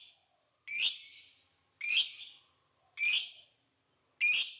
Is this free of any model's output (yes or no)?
yes